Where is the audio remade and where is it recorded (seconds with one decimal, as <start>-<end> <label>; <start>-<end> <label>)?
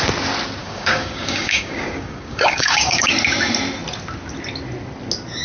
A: 0.0-0.6 recorded; 0.6-3.1 remade; 3.1-5.4 recorded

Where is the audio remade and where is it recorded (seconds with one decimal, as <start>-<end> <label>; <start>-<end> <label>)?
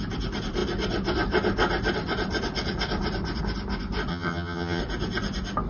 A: 0.0-4.1 recorded; 4.1-4.8 remade; 4.8-5.7 recorded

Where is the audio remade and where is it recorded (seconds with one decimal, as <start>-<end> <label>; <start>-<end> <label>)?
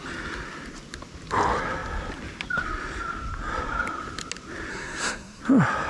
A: 0.0-4.7 recorded; 4.7-5.4 remade; 5.4-5.9 recorded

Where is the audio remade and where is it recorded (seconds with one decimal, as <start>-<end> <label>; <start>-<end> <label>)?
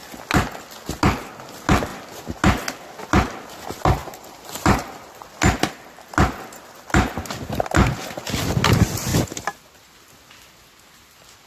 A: 0.0-11.5 recorded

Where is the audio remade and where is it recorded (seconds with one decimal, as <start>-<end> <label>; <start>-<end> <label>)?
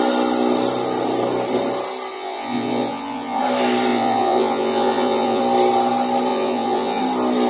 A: 0.0-2.1 recorded; 2.1-3.4 remade; 3.4-3.9 recorded; 3.9-5.4 remade; 5.4-6.3 recorded; 6.3-7.0 remade; 7.0-7.5 recorded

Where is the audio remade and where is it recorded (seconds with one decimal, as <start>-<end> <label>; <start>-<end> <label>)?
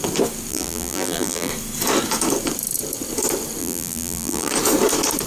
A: 0.0-0.5 recorded; 0.5-1.5 remade; 1.5-3.6 recorded; 3.6-4.5 remade; 4.5-5.3 recorded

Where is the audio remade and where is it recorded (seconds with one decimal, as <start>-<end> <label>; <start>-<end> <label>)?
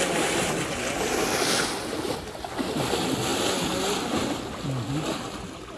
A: 0.0-5.8 recorded